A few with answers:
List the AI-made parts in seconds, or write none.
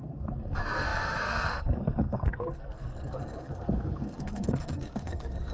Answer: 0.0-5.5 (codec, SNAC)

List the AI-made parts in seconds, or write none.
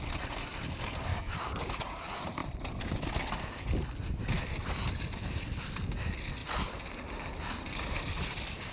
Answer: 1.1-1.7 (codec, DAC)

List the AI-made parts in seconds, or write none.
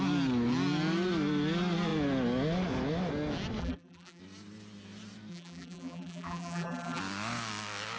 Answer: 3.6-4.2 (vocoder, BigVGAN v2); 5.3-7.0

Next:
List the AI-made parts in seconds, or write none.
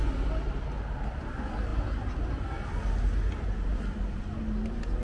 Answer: none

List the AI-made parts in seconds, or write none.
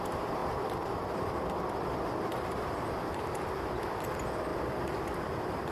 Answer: 0.4-1.5 (vocoder, BigVGAN v2)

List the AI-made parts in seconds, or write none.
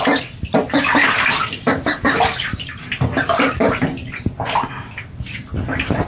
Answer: 0.0-3.8 (vocoder, BigVGAN v2)